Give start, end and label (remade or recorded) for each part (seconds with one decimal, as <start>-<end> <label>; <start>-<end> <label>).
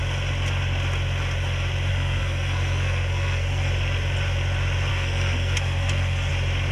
0.0-1.9 recorded; 1.9-3.7 remade; 3.7-4.9 recorded; 4.9-6.3 remade; 6.3-6.7 recorded